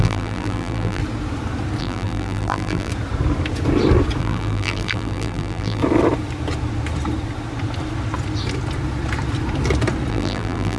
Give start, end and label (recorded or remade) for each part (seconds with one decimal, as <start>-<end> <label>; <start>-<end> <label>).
0.0-1.0 remade; 1.0-1.8 recorded; 1.8-2.9 remade; 2.9-4.2 recorded; 4.2-5.8 remade; 5.8-10.1 recorded; 10.1-10.8 remade